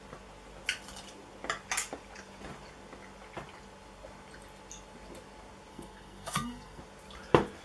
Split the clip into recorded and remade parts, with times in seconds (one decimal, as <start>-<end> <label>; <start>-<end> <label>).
0.0-5.7 recorded; 5.7-6.8 remade; 6.8-7.6 recorded